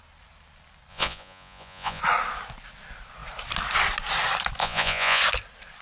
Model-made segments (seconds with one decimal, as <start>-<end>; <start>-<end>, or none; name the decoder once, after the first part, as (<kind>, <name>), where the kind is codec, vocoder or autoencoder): 0.9-2.0 (vocoder, Vocos); 4.6-5.2